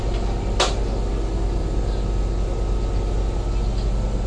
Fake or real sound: real